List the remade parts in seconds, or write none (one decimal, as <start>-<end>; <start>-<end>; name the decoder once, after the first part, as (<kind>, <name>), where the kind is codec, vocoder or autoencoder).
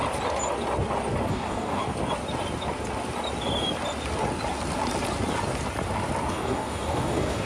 1.3-1.8 (codec, DAC); 6.3-7.5